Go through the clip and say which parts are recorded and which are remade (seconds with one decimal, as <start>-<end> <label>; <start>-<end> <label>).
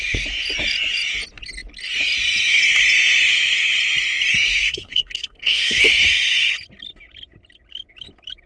0.0-4.6 recorded; 4.6-5.8 remade; 5.8-8.5 recorded